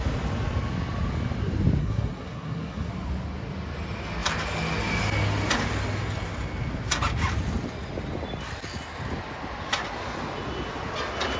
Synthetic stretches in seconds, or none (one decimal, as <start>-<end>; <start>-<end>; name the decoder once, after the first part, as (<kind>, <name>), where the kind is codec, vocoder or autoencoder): 1.8-2.9 (codec, SNAC)